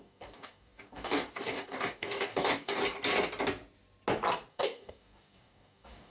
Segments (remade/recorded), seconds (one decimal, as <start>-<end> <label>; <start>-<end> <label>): 0.0-2.8 remade; 2.8-4.5 recorded; 4.5-6.1 remade